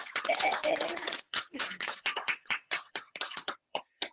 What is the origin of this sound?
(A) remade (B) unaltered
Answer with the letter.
A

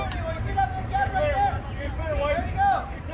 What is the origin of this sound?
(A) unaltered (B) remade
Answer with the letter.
A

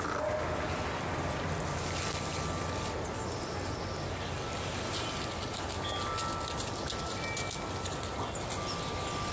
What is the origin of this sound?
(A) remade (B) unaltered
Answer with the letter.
B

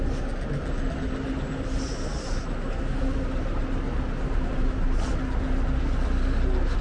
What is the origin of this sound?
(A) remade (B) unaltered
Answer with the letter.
B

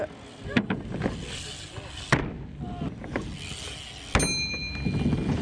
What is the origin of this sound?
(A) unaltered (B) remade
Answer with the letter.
A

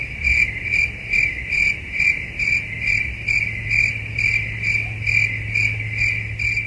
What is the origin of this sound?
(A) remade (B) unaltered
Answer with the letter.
B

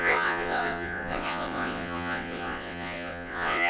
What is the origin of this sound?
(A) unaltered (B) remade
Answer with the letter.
B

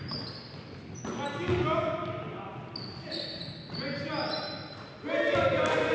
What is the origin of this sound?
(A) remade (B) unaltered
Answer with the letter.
B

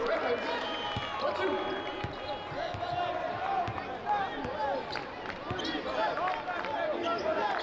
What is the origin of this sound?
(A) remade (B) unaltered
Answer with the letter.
B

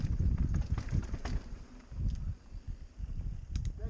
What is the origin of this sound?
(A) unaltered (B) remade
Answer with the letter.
A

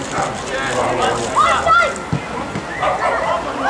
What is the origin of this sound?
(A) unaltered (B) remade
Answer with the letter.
A